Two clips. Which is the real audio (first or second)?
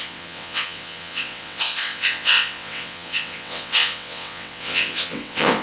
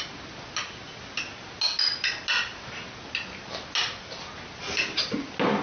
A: second